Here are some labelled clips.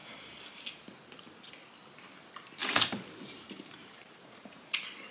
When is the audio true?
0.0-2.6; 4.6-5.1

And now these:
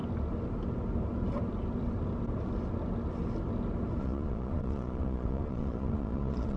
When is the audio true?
0.0-4.0

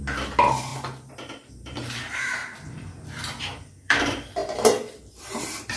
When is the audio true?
2.4-3.4; 4.4-5.1

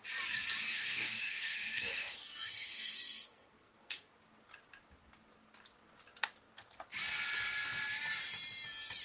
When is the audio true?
0.0-0.7; 4.1-9.0

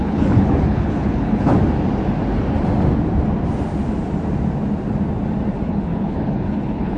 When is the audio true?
1.5-5.7

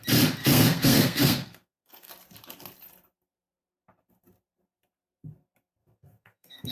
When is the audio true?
0.0-0.4; 2.1-5.8

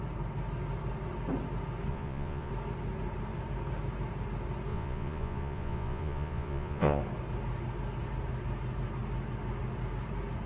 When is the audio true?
0.0-1.9; 2.5-4.7; 7.0-10.5

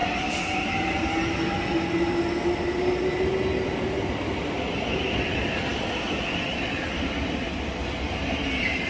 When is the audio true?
0.0-8.9